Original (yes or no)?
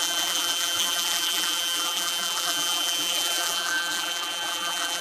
no